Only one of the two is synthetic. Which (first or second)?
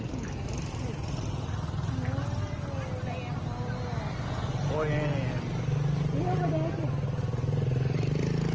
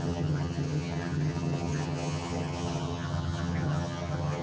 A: second